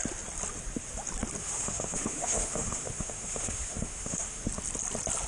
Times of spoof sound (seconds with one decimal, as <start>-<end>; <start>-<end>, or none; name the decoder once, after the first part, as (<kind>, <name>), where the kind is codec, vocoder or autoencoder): 1.4-4.4 (autoencoder, DAC-VAE)